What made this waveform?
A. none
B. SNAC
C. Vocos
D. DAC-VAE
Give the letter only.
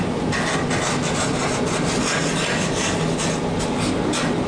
A